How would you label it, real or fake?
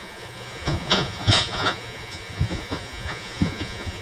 fake